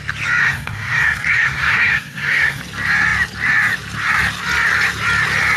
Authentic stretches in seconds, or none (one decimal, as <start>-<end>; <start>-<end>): 0.0-0.4; 2.6-5.6